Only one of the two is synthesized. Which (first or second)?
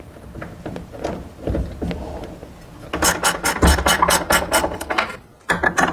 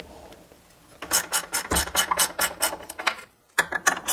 second